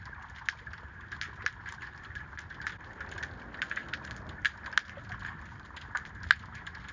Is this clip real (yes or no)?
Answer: yes